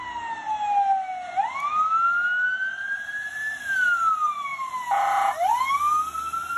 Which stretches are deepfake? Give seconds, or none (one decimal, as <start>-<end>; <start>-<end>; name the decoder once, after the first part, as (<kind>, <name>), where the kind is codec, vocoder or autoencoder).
none